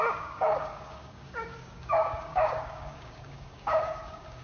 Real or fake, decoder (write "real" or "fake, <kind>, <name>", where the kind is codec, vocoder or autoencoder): fake, codec, DAC